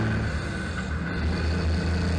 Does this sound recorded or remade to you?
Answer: recorded